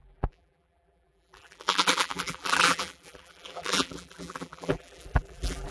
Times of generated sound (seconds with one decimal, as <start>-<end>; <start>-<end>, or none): 0.0-5.7